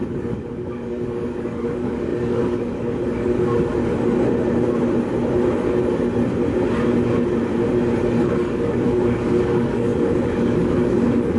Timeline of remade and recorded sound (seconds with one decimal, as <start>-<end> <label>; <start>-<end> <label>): 0.0-3.7 remade; 3.7-8.2 recorded; 8.2-11.4 remade

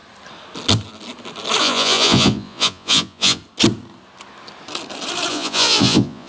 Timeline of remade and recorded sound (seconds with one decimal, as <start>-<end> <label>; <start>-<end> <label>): 0.0-1.6 recorded; 1.6-3.4 remade; 3.4-5.3 recorded; 5.3-6.3 remade

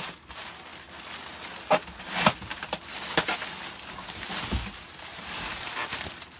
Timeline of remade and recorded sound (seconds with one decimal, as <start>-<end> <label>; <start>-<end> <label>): 0.0-0.7 remade; 0.7-4.5 recorded; 4.5-6.4 remade

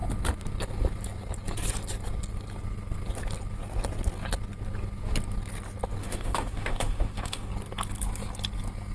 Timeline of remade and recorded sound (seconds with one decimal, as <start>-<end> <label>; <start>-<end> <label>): 0.0-6.0 recorded; 6.0-7.5 remade; 7.5-8.9 recorded

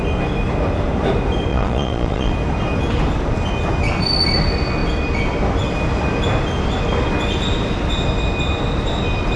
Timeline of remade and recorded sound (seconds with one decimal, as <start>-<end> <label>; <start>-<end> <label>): 0.0-1.5 recorded; 1.5-2.3 remade; 2.3-9.4 recorded

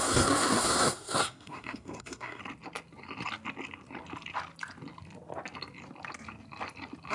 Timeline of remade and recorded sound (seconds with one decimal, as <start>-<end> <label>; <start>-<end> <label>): 0.0-2.4 remade; 2.4-7.1 recorded

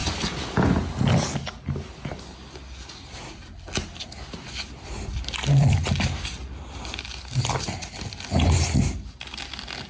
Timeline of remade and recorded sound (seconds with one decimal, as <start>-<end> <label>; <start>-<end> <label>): 0.0-9.9 recorded

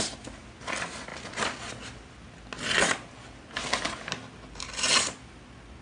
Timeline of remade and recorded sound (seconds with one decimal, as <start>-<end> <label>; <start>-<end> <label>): 0.0-5.8 recorded